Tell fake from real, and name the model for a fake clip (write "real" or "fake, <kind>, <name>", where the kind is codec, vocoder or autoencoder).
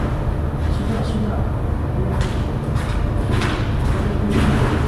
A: real